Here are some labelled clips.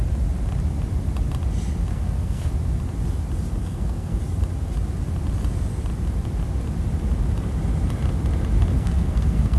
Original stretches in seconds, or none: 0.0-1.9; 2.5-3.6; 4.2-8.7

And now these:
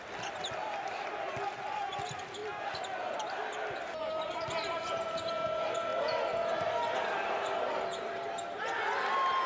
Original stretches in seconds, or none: 0.0-9.5

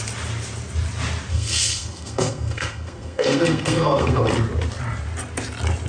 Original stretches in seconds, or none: 0.0-1.3; 4.3-5.9